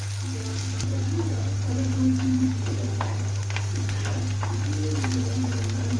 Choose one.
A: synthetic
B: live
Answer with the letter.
B